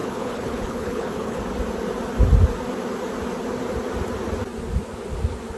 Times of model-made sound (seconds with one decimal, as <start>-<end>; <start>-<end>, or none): 0.0-1.4